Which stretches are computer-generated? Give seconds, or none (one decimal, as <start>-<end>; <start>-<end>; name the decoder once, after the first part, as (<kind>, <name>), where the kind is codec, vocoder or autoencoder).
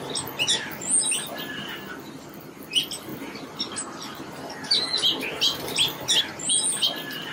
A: none